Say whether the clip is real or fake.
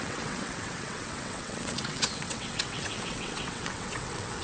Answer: fake